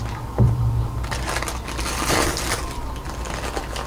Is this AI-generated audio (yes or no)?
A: no